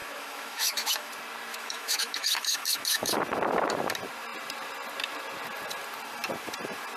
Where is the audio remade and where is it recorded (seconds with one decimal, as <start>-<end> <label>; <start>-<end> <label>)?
0.0-1.1 remade; 1.1-1.5 recorded; 1.5-3.2 remade; 3.2-7.0 recorded